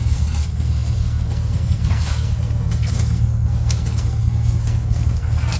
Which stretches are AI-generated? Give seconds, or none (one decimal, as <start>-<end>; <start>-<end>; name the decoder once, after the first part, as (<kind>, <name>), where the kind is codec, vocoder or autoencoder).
0.0-5.6 (codec, SNAC)